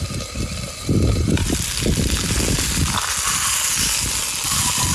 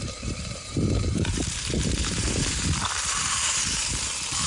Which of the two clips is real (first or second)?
first